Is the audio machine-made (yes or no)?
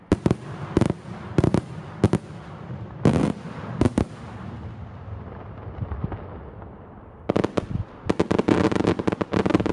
no